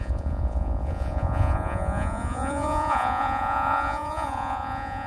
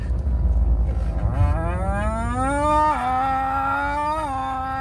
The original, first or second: second